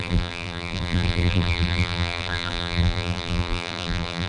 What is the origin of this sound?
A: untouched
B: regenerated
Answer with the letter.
B